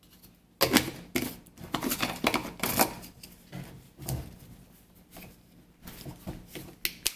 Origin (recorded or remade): recorded